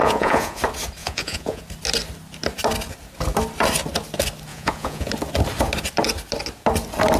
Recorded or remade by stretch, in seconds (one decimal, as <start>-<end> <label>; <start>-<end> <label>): 0.0-0.6 remade; 0.6-1.0 recorded; 1.0-1.6 remade; 1.6-4.5 recorded; 4.5-5.1 remade; 5.1-7.2 recorded